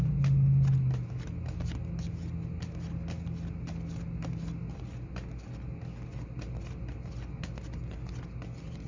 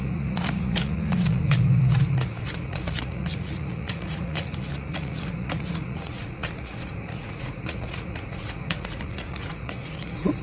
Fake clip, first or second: second